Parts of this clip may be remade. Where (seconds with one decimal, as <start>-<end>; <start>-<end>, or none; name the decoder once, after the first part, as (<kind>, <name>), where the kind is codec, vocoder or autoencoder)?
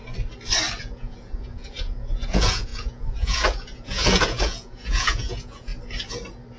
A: 0.8-5.7 (vocoder, Vocos)